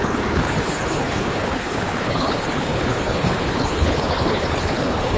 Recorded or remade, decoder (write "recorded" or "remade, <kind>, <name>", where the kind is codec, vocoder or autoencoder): remade, codec, HILCodec